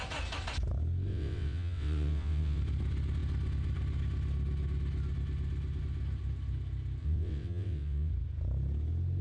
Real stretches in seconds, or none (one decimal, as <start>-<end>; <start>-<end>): 0.0-1.1; 2.6-7.0; 8.1-9.2